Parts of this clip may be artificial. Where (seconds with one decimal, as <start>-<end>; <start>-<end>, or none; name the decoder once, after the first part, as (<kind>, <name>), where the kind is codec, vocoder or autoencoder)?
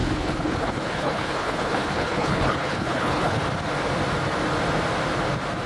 0.0-3.4 (codec, HILCodec)